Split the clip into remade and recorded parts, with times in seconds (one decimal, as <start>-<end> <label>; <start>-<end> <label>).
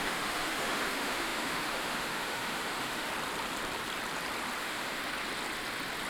0.0-3.1 remade; 3.1-4.6 recorded; 4.6-5.0 remade; 5.0-6.1 recorded